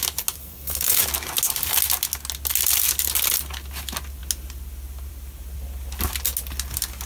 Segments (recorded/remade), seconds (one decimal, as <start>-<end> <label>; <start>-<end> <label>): 0.0-0.4 recorded; 0.4-1.0 remade; 1.0-7.1 recorded